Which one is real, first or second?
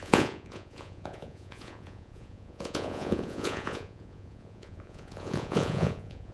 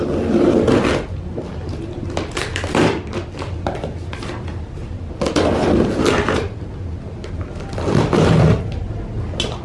second